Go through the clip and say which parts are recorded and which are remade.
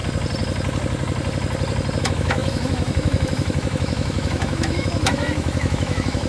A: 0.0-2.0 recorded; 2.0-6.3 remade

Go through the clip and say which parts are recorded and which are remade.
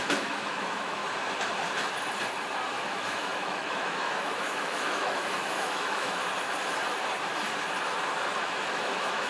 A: 0.0-1.0 remade; 1.0-2.7 recorded; 2.7-6.2 remade; 6.2-8.7 recorded; 8.7-9.3 remade